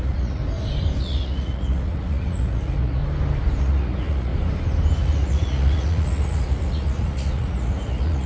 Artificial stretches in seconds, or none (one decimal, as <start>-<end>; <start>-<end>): 0.0-0.4; 1.0-3.0; 3.6-4.3; 5.0-8.3